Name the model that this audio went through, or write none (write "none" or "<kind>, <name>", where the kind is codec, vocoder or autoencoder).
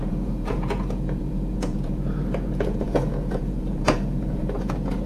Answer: vocoder, Vocos